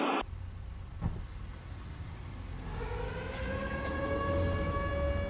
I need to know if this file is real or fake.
real